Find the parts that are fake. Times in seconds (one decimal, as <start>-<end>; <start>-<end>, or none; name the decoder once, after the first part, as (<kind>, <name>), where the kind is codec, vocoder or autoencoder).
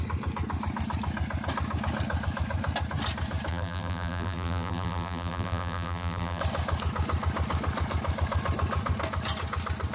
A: 3.5-6.4 (vocoder, BigVGAN v2)